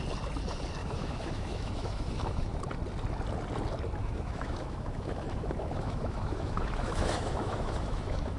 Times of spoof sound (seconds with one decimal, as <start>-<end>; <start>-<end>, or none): 0.8-2.6; 4.0-8.4